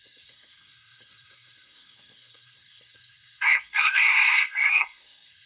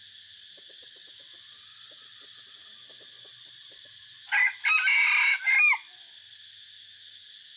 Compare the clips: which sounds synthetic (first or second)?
first